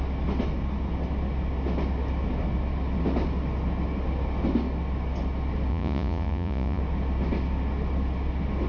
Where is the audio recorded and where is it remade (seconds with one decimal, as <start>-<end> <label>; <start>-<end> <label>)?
0.0-5.7 recorded; 5.7-6.8 remade; 6.8-8.7 recorded